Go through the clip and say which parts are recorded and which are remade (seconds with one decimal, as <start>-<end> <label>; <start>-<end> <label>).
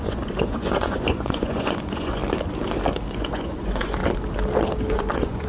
0.0-2.2 remade; 2.2-3.1 recorded; 3.1-4.0 remade; 4.0-4.9 recorded; 4.9-5.5 remade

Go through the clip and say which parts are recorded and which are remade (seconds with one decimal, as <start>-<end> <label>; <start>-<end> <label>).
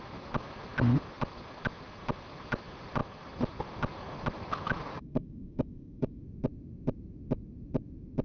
0.0-4.9 recorded; 4.9-6.2 remade; 6.2-8.2 recorded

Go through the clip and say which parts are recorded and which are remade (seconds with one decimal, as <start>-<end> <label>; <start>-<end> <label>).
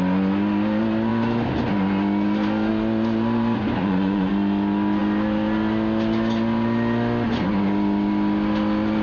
0.0-3.8 recorded; 3.8-4.3 remade; 4.3-9.0 recorded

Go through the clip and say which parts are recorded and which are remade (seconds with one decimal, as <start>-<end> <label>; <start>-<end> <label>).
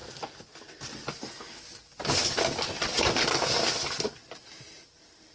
0.0-5.3 recorded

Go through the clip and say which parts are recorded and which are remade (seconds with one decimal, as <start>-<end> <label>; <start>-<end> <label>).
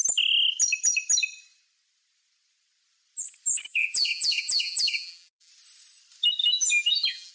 0.0-3.7 recorded; 3.7-5.5 remade; 5.5-6.4 recorded; 6.4-7.3 remade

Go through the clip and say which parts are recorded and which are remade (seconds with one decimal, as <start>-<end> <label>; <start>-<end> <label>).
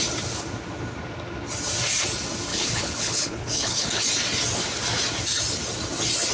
0.0-2.5 recorded; 2.5-4.0 remade; 4.0-6.3 recorded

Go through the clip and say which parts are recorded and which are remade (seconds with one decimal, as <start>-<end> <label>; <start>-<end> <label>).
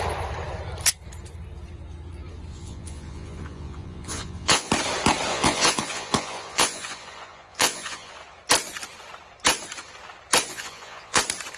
0.0-2.5 recorded; 2.5-4.7 remade; 4.7-5.3 recorded; 5.3-8.1 remade; 8.1-10.5 recorded; 10.5-11.2 remade; 11.2-11.6 recorded